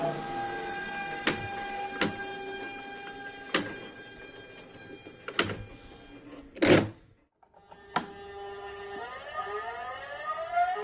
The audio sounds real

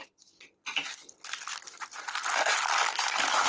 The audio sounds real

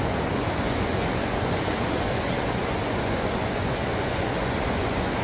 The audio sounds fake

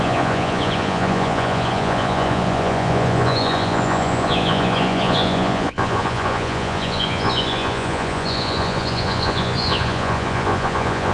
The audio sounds fake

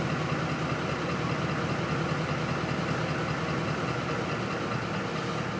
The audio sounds real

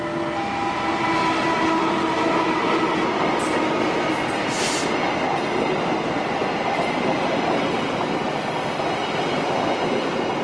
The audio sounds real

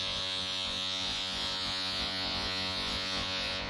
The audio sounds fake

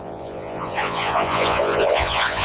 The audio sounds fake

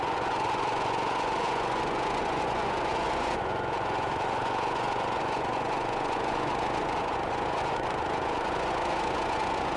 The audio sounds fake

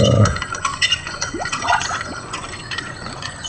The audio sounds fake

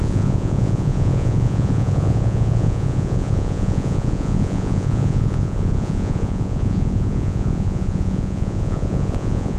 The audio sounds fake